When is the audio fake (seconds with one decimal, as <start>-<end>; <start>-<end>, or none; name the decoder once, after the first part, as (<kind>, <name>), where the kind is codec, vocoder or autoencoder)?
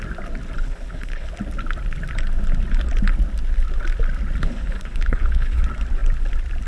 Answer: 0.6-1.3 (codec, HILCodec); 4.4-5.6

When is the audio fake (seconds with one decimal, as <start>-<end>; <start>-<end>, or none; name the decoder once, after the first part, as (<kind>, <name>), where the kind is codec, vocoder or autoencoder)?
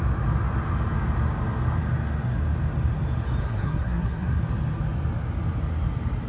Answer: 3.4-4.4 (codec, SNAC)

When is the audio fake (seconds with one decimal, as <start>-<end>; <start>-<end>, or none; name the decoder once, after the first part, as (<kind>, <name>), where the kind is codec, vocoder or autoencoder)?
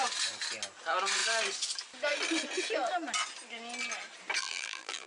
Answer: 4.4-5.1 (vocoder, BigVGAN v2)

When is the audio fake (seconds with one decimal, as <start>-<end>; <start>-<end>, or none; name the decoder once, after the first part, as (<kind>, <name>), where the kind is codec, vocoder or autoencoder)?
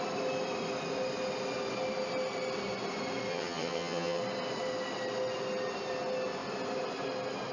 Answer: 3.3-4.2 (vocoder, HiFi-GAN)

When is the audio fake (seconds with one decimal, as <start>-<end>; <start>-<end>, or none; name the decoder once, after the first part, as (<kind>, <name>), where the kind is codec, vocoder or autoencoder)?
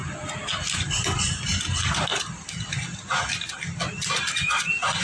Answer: none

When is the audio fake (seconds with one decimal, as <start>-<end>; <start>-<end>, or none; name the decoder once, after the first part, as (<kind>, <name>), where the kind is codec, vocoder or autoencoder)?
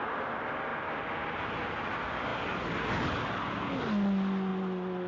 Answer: none